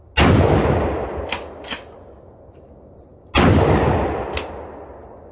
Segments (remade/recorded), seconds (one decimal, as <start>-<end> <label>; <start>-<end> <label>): 0.0-5.3 recorded